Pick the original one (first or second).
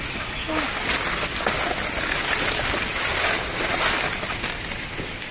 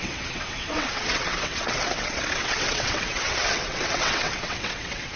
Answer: first